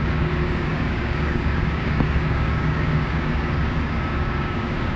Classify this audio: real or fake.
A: fake